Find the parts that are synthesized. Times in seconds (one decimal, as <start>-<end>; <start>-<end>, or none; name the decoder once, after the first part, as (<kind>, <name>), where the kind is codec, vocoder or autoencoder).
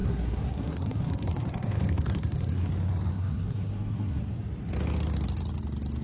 0.0-2.7 (codec, SNAC); 3.1-4.2